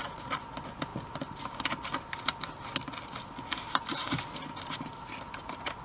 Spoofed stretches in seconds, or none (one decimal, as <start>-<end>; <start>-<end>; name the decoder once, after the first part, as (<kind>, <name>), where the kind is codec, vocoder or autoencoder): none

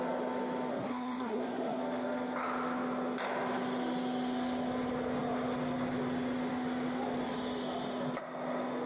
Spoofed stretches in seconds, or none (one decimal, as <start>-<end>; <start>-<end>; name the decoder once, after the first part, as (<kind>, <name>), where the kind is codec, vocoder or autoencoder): 0.7-1.8 (codec, SNAC)

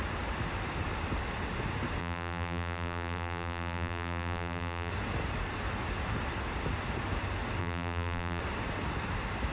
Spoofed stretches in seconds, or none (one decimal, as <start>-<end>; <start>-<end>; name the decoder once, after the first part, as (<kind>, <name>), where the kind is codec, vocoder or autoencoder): 2.0-4.9 (vocoder, BigVGAN v2); 7.6-8.4

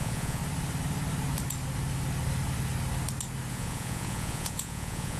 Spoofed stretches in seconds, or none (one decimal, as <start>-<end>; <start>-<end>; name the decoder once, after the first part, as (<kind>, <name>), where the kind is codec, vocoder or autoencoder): 0.0-0.4 (vocoder, Vocos); 3.5-5.2

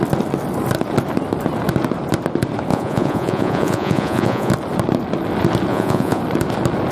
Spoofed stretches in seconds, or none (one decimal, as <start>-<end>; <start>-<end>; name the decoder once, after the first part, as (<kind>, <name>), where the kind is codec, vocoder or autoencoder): 2.7-4.5 (vocoder, Vocos); 5.7-6.2

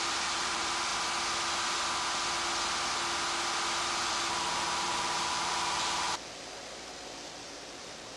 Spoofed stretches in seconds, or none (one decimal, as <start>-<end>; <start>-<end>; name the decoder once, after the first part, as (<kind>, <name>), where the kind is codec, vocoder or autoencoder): 0.0-0.9 (vocoder, BigVGAN v2); 3.8-8.2

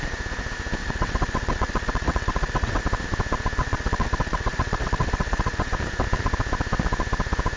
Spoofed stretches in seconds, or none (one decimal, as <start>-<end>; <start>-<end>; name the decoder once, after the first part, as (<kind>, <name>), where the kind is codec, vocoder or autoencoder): 0.8-2.8 (vocoder, WaveNeXt); 3.6-5.7